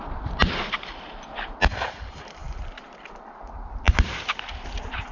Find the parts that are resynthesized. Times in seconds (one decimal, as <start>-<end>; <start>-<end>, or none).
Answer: none